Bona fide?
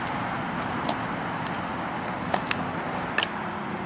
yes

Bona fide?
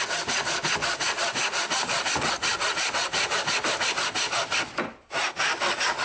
yes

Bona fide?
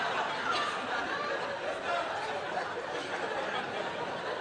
yes